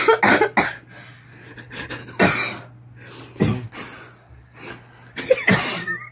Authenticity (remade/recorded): recorded